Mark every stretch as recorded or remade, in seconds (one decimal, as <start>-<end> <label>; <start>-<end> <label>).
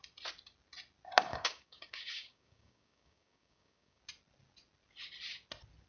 0.0-1.3 recorded; 1.3-4.0 remade; 4.0-5.9 recorded